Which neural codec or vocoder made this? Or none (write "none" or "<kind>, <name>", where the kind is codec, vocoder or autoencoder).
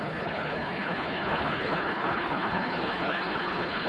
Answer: codec, HILCodec